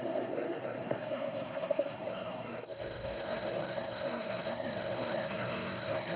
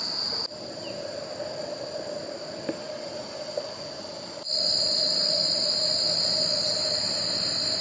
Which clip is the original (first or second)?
second